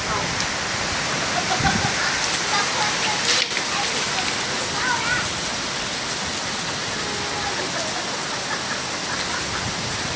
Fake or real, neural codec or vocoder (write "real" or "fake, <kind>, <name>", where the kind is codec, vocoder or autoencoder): real